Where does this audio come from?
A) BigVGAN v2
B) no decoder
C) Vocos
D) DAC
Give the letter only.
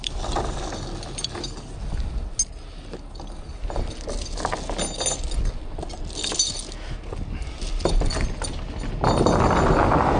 B